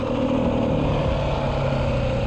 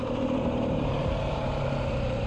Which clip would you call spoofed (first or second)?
second